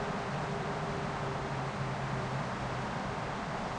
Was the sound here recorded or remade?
remade